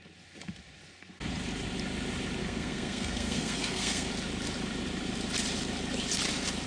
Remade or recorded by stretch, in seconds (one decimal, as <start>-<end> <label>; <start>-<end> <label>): 0.0-2.4 recorded; 2.4-4.1 remade; 4.1-6.7 recorded